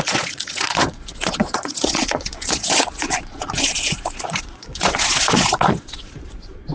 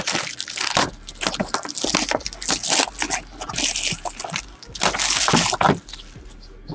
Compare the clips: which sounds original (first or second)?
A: second